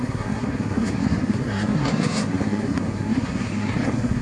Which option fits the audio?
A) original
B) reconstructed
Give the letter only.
B